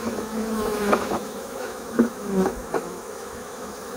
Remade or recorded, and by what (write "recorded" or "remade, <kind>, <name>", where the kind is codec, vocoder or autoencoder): remade, autoencoder, DAC-VAE